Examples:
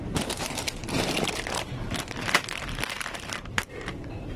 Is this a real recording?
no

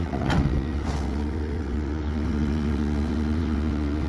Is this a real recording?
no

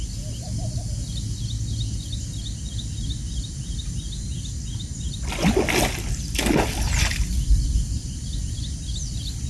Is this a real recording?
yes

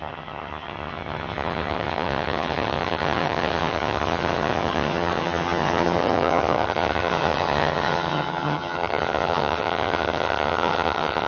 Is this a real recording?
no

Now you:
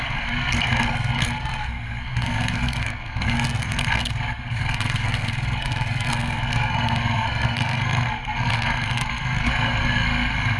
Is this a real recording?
no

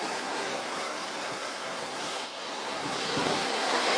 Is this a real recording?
no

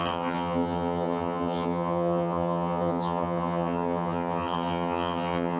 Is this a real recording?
no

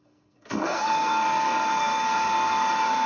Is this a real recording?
no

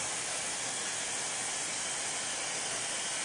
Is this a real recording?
yes